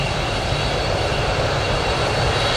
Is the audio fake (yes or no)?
yes